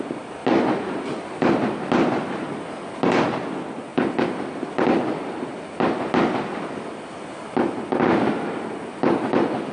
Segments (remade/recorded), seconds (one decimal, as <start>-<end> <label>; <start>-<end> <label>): 0.0-9.7 recorded